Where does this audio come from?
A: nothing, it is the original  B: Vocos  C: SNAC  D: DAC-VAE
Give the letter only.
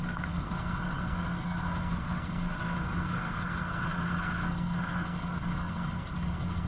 C